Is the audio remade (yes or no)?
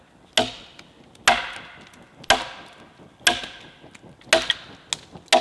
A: no